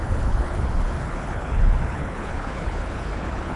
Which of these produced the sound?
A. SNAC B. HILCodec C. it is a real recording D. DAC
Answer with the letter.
B